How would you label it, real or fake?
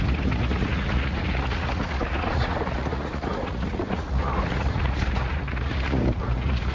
fake